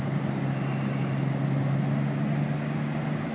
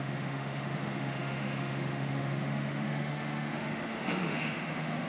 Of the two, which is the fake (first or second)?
second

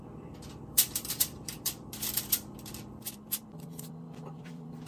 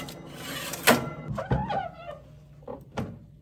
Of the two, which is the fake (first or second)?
first